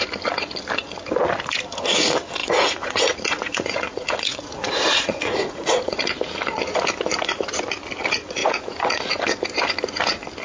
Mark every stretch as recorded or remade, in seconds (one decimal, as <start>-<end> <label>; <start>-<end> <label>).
0.0-2.4 recorded; 2.4-6.0 remade; 6.0-8.4 recorded; 8.4-9.0 remade; 9.0-10.4 recorded